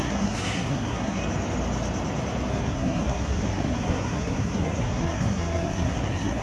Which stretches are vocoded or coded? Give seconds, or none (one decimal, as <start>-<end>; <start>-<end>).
0.0-1.2; 2.5-6.4